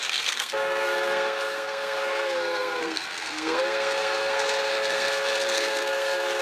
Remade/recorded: remade